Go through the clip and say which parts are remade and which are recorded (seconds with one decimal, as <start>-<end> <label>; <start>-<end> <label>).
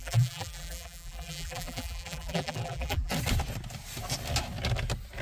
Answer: 0.0-3.1 remade; 3.1-5.2 recorded